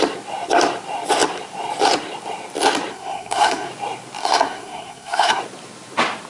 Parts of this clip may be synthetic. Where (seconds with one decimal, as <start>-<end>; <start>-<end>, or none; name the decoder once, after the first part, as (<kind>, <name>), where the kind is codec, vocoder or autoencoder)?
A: 2.9-3.7 (codec, SNAC); 4.2-5.4